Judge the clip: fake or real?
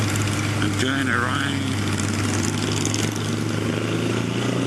real